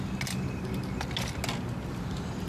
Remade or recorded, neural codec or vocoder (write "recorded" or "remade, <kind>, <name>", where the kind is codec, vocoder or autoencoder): recorded